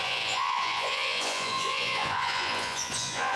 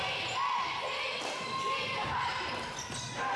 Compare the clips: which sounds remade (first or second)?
first